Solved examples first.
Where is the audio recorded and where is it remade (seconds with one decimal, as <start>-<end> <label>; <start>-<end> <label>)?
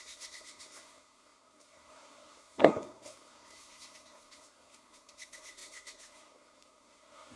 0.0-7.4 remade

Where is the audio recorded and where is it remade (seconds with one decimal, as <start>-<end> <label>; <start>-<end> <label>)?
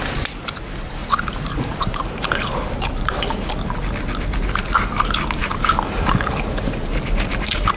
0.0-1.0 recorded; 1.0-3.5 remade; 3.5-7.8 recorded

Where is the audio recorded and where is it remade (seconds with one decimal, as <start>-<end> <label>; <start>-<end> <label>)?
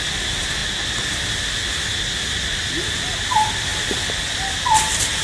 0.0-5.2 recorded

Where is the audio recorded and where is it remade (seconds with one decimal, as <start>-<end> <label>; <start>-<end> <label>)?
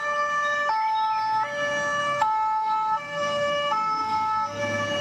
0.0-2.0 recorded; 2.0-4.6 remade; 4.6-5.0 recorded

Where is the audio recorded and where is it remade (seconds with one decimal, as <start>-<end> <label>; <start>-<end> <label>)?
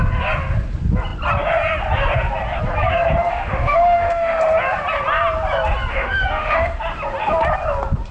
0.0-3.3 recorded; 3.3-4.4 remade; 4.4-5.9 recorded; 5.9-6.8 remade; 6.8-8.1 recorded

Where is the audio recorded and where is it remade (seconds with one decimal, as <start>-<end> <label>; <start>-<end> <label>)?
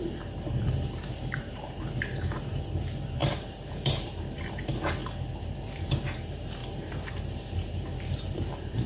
0.0-5.0 remade; 5.0-5.9 recorded; 5.9-6.6 remade; 6.6-7.1 recorded; 7.1-8.9 remade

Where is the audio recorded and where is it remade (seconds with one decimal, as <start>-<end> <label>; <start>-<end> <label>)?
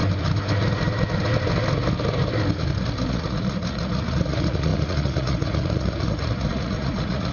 0.0-3.1 recorded; 3.1-7.3 remade